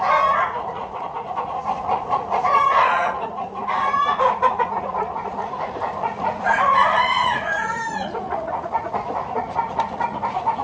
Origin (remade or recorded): remade